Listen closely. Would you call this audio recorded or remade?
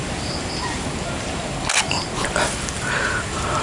recorded